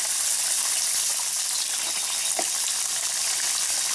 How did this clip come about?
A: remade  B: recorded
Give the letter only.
B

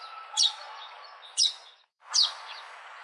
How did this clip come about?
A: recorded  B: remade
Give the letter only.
B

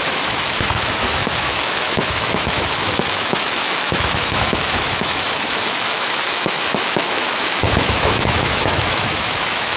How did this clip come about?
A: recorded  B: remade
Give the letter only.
B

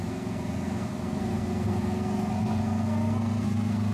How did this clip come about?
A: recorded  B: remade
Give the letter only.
B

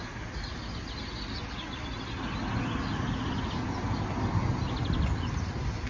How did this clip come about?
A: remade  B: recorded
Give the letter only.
B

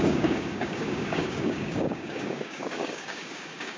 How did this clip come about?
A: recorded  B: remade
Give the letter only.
B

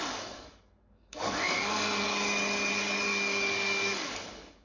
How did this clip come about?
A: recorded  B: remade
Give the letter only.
B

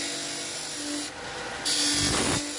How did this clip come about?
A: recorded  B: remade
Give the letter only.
A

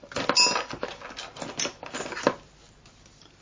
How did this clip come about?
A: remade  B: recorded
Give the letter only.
B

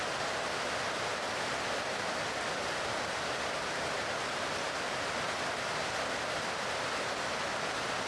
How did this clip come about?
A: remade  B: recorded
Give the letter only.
B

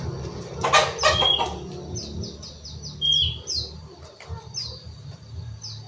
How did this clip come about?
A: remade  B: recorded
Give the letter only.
B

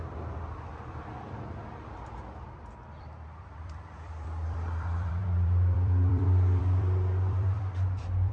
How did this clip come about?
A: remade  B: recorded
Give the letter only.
A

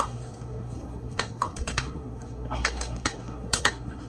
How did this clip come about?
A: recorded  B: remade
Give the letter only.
B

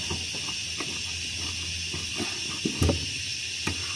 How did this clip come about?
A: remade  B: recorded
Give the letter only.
B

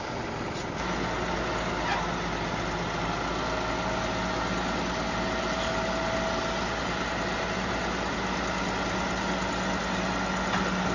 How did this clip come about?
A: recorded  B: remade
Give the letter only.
A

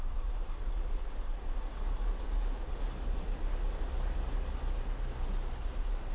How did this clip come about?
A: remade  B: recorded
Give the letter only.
B